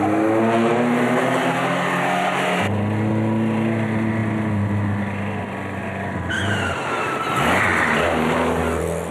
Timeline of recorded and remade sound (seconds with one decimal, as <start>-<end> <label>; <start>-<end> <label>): 0.0-9.1 recorded